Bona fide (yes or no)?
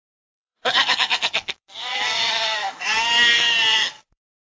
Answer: no